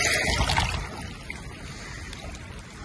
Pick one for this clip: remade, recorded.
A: recorded